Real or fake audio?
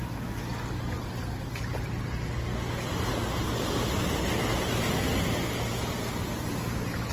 real